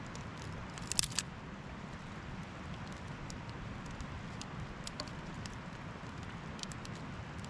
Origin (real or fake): real